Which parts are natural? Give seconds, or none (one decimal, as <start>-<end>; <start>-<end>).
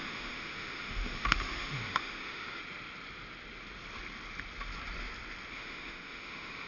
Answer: 2.6-5.5